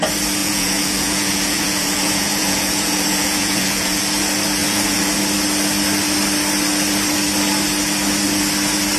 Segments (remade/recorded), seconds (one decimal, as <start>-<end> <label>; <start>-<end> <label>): 0.0-0.4 recorded; 0.4-4.0 remade; 4.0-4.6 recorded; 4.6-5.1 remade; 5.1-9.0 recorded